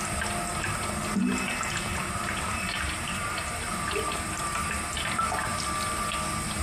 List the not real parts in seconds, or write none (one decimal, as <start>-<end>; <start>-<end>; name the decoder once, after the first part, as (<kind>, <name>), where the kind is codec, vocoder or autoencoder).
1.9-5.6 (vocoder, BigVGAN v2)